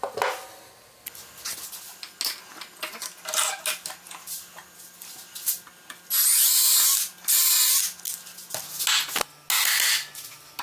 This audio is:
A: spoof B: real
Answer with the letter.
B